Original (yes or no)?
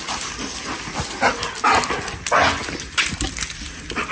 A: yes